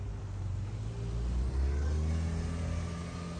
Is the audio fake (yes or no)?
no